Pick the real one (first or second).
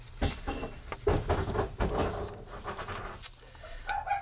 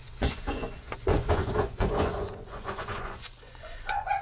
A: first